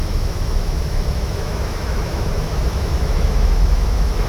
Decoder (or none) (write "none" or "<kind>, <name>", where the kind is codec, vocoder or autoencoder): autoencoder, DAC-VAE